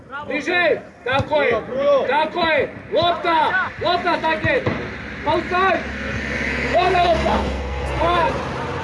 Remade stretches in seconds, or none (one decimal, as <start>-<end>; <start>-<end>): 5.9-8.3